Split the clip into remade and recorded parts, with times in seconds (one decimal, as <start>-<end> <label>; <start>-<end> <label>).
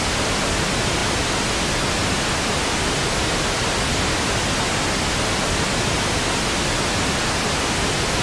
0.0-8.2 recorded